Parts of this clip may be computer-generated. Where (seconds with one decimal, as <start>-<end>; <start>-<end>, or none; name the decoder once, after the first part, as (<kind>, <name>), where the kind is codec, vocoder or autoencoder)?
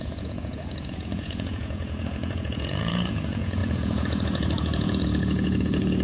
0.0-6.0 (vocoder, Vocos)